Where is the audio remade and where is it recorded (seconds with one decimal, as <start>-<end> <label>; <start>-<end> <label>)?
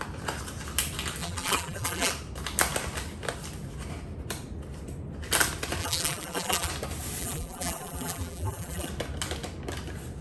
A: 0.0-1.2 recorded; 1.2-2.1 remade; 2.1-5.8 recorded; 5.8-6.7 remade; 6.7-7.2 recorded; 7.2-8.9 remade; 8.9-10.2 recorded